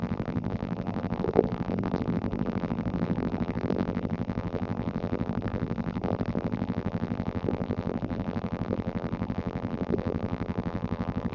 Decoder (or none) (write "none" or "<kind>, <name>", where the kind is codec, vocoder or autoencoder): vocoder, BigVGAN v2